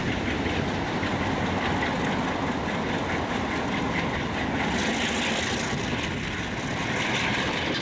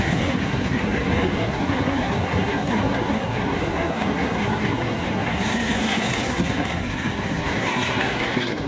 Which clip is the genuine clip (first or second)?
first